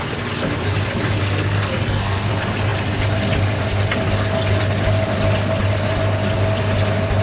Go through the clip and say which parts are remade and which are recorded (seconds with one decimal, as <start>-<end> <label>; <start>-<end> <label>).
0.0-1.2 recorded; 1.2-2.3 remade; 2.3-7.2 recorded